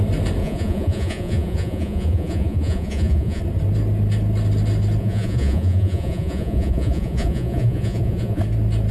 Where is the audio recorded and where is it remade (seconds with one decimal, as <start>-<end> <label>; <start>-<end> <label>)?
0.0-0.4 recorded; 0.4-3.4 remade; 3.4-5.0 recorded; 5.0-8.4 remade; 8.4-8.9 recorded